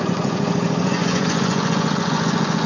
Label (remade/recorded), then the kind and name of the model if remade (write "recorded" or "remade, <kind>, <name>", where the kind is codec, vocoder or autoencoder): remade, vocoder, Vocos